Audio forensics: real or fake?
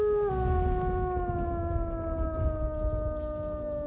real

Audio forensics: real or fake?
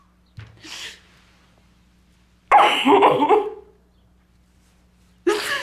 real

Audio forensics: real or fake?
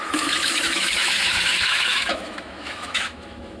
fake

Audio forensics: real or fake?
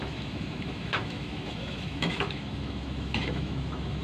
fake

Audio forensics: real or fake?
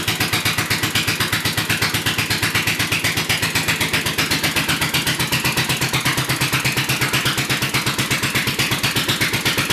real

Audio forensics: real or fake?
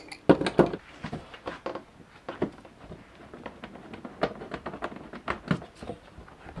real